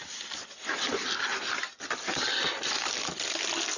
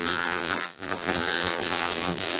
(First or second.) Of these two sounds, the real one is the first